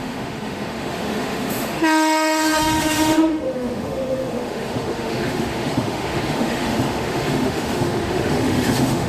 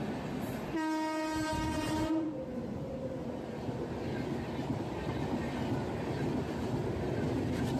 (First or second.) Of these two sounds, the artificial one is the first